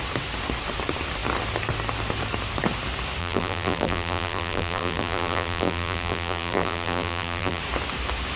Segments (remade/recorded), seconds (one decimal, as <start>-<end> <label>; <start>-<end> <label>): 0.0-3.2 recorded; 3.2-7.6 remade; 7.6-8.4 recorded